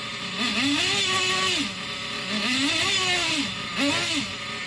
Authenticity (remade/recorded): recorded